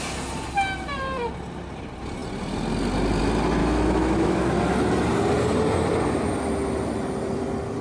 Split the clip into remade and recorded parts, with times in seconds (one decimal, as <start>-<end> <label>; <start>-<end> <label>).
0.0-3.6 recorded; 3.6-4.5 remade; 4.5-7.8 recorded